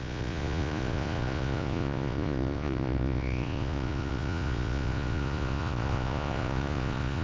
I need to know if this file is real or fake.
fake